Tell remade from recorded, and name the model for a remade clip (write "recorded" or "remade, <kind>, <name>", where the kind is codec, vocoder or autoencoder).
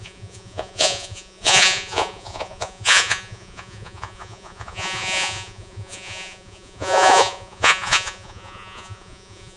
remade, vocoder, Vocos